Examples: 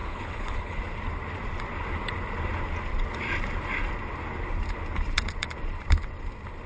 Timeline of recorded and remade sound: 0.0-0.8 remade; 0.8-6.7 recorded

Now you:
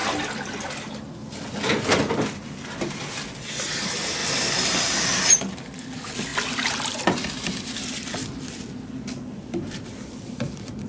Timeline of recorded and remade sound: 0.0-10.9 recorded